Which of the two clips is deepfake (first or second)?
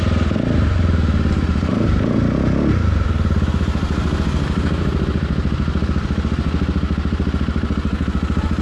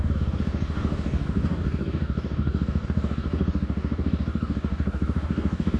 second